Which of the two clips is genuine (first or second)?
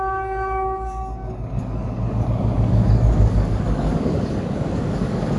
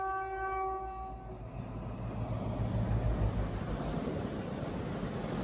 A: second